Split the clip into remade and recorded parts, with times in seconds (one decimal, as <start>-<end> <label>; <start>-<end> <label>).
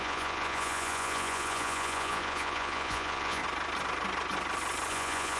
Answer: 0.0-3.4 remade; 3.4-4.9 recorded; 4.9-5.4 remade